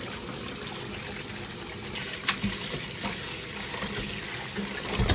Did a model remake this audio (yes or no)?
no